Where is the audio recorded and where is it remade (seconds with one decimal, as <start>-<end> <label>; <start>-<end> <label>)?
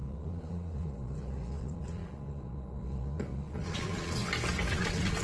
0.0-4.2 remade; 4.2-4.7 recorded; 4.7-5.2 remade